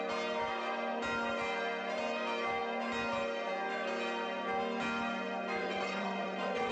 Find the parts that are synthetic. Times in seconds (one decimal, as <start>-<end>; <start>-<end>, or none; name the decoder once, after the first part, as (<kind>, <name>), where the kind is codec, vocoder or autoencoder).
5.6-6.7 (vocoder, WaveNeXt)